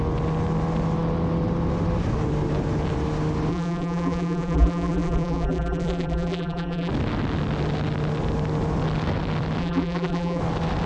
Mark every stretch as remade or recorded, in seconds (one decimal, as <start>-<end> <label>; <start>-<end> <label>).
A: 0.0-3.5 recorded; 3.5-6.9 remade; 6.9-9.6 recorded; 9.6-10.4 remade; 10.4-10.9 recorded